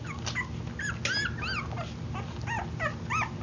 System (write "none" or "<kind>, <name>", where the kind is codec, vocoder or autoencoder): none